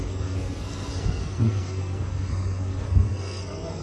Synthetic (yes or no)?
yes